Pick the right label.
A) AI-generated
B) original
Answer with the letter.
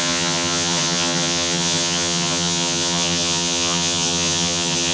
A